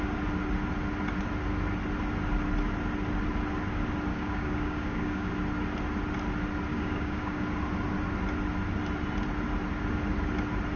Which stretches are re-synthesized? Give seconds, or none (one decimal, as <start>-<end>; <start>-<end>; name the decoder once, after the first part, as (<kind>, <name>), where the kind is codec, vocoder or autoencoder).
4.1-5.3 (codec, DAC); 6.7-7.4